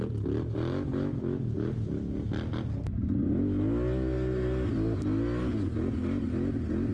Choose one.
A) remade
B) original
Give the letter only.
B